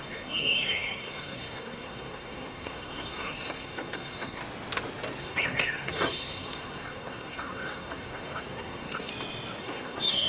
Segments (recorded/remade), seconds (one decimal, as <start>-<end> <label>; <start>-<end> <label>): 0.0-4.4 remade; 4.4-5.2 recorded; 5.2-9.1 remade; 9.1-9.6 recorded; 9.6-10.3 remade